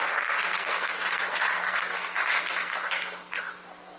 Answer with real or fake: fake